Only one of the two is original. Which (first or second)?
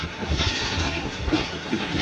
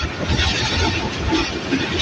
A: second